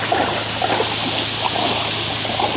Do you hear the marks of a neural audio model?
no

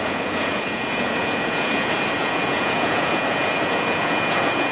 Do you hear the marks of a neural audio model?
yes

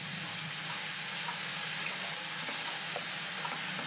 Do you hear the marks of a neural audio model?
no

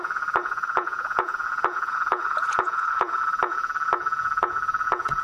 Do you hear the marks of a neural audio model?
yes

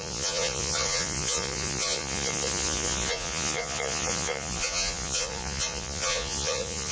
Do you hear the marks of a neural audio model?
yes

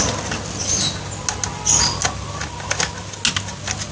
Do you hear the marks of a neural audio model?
no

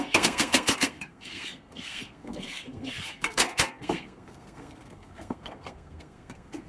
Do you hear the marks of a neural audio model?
yes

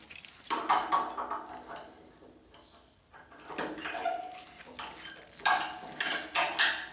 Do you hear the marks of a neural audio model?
no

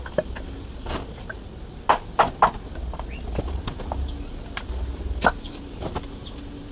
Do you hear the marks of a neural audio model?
no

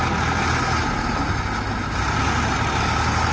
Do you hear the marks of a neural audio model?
no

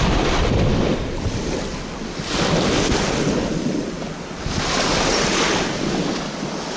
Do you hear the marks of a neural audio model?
no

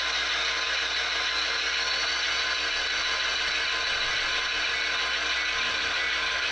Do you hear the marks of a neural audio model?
no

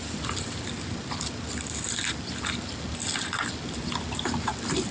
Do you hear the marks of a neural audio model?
no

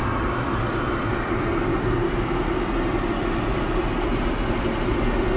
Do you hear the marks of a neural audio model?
no